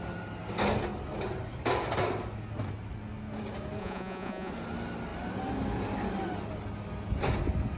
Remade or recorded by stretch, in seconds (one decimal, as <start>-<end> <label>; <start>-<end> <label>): 0.0-3.8 recorded; 3.8-4.5 remade; 4.5-7.8 recorded